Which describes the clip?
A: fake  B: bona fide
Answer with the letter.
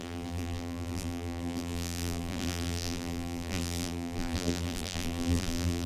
A